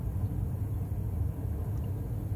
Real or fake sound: real